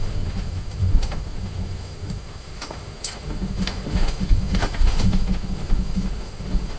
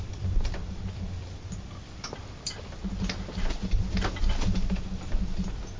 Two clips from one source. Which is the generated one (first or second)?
first